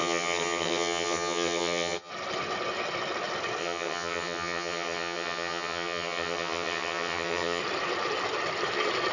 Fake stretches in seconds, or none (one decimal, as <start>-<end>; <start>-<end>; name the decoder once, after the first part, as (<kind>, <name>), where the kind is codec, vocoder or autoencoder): 0.0-2.1 (vocoder, HiFi-GAN); 3.6-7.6